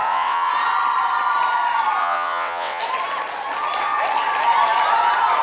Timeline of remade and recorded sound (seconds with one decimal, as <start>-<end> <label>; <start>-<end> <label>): 0.0-0.5 remade; 0.5-2.0 recorded; 2.0-2.8 remade; 2.8-5.4 recorded